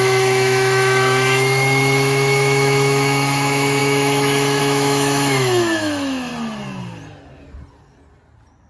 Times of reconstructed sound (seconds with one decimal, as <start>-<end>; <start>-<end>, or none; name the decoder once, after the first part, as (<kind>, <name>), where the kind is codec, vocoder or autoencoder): 0.0-6.3 (autoencoder, DAC-VAE)